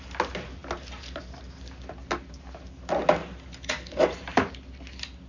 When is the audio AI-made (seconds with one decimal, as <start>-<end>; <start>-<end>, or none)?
3.2-4.5